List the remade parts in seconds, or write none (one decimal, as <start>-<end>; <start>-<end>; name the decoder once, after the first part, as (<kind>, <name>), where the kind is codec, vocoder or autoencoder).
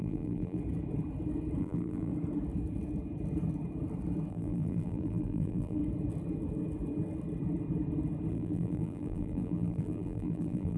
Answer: 0.0-0.6 (vocoder, BigVGAN v2); 1.6-2.1; 4.3-5.8; 8.3-10.8